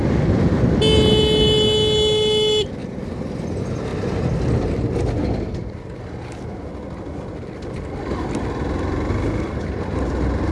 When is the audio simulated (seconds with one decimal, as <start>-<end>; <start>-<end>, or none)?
none